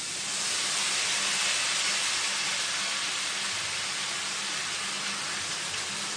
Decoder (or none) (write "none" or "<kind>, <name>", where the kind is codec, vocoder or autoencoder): none